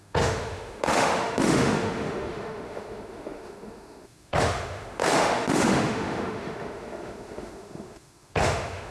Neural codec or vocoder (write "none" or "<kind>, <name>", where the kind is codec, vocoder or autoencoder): autoencoder, DAC-VAE